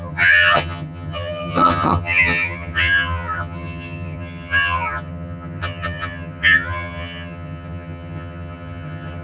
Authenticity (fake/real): fake